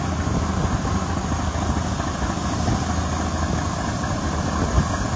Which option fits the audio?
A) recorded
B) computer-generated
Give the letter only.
A